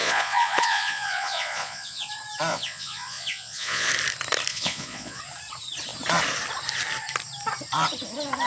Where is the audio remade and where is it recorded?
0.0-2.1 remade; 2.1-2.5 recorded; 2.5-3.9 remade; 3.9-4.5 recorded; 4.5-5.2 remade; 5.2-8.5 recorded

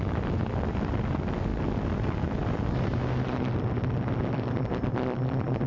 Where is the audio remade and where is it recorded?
0.0-5.7 recorded

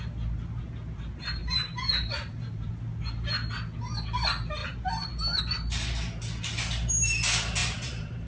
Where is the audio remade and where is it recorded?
0.0-1.4 recorded; 1.4-2.7 remade; 2.7-7.6 recorded; 7.6-8.3 remade

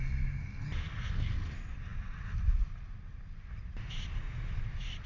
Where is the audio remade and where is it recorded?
0.0-5.1 recorded

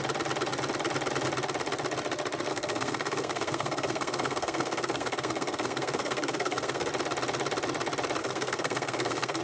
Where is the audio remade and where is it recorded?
0.0-2.5 recorded; 2.5-6.9 remade; 6.9-8.2 recorded; 8.2-9.4 remade

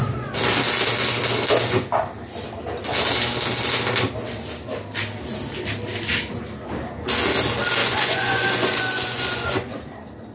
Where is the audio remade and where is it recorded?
0.0-7.8 recorded; 7.8-9.8 remade; 9.8-10.3 recorded

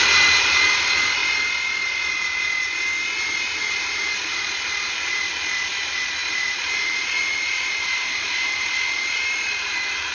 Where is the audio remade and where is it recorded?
0.0-1.2 remade; 1.2-3.6 recorded; 3.6-10.1 remade